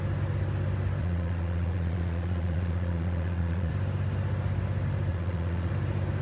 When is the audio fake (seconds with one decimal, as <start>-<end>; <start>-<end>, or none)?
1.0-3.7; 5.1-5.7